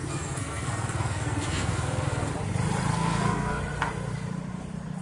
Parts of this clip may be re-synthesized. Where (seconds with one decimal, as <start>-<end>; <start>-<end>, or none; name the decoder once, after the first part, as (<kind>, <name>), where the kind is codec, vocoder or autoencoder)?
0.0-2.3 (codec, SNAC); 2.9-3.6